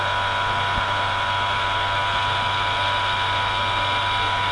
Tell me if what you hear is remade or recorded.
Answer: recorded